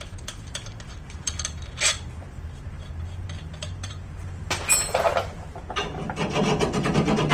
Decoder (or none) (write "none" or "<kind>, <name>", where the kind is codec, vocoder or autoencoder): vocoder, BigVGAN v2